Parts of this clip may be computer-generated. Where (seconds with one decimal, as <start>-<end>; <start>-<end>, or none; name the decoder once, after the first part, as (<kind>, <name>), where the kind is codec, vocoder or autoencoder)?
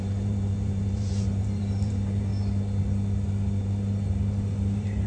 0.0-2.3 (vocoder, BigVGAN v2); 3.6-5.1